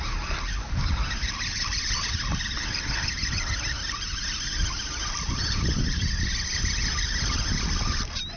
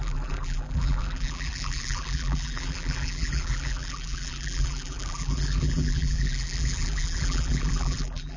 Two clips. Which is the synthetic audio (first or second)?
second